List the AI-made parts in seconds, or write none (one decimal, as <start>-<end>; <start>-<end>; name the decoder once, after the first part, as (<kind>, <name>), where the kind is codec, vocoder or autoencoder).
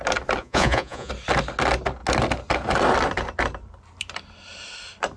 0.4-1.1 (vocoder, Vocos)